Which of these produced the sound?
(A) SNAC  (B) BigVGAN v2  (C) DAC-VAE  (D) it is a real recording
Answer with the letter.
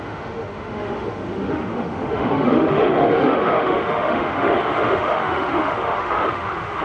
C